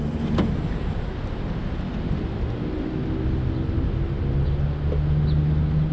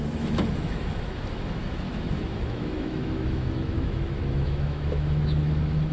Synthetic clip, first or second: second